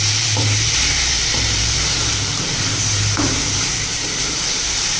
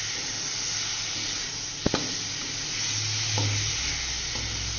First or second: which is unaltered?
second